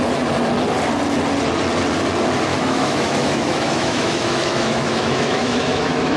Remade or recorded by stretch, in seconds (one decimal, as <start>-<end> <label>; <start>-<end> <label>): 0.0-2.5 recorded; 2.5-6.2 remade